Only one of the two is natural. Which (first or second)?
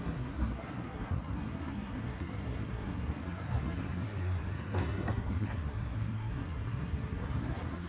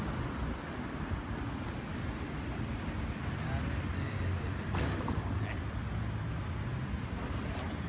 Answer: second